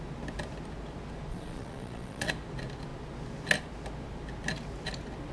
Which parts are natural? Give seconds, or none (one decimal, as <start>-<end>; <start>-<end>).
0.0-1.3; 2.3-5.3